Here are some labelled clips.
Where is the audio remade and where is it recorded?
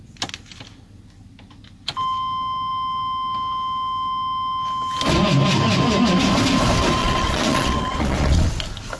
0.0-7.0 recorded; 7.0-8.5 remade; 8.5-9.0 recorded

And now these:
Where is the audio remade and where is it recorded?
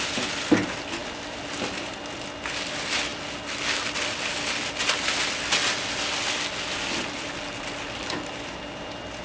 0.0-9.2 recorded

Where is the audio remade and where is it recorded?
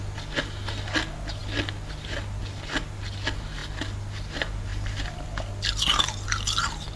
0.0-7.0 recorded